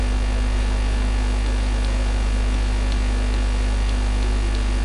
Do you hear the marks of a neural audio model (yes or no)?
no